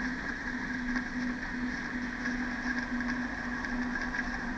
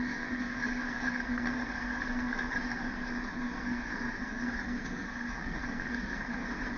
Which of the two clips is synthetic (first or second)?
second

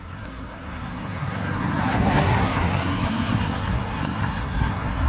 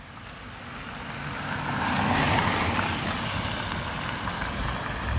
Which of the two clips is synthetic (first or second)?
first